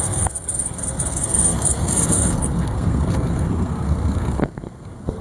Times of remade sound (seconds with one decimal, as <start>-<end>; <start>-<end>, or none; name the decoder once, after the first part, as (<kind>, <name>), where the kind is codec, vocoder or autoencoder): 0.0-5.2 (codec, SNAC)